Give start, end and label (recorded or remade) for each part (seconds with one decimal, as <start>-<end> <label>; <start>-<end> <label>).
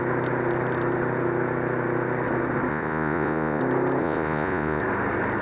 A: 0.0-2.7 recorded; 2.7-3.6 remade; 3.6-4.0 recorded; 4.0-4.8 remade; 4.8-5.4 recorded